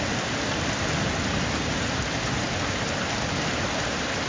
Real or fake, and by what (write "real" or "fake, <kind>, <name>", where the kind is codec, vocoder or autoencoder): real